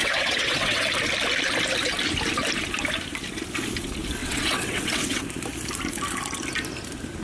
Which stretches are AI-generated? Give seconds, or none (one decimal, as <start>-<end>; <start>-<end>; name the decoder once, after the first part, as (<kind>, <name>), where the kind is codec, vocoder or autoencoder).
0.0-0.9 (vocoder, WaveNeXt); 4.2-5.2